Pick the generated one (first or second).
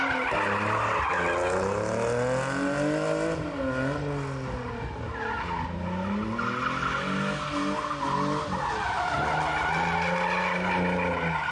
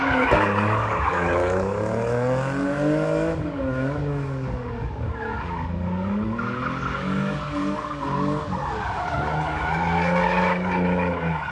second